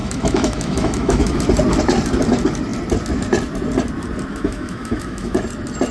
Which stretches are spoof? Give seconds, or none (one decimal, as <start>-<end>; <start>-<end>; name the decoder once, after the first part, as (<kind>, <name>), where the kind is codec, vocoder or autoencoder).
0.0-1.4 (autoencoder, DAC-VAE); 4.3-5.4